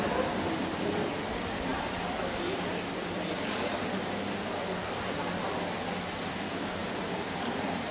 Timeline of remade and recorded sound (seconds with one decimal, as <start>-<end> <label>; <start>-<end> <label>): 0.0-6.8 recorded; 6.8-7.9 remade